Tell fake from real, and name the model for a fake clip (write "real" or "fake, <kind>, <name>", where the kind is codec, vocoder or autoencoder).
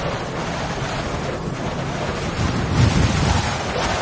real